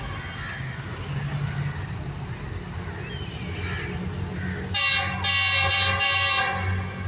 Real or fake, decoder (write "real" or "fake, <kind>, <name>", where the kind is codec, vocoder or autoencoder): real